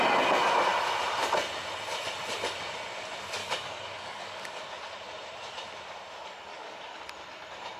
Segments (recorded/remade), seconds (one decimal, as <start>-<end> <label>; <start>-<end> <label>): 0.0-3.4 recorded; 3.4-4.6 remade; 4.6-6.5 recorded; 6.5-7.0 remade; 7.0-7.8 recorded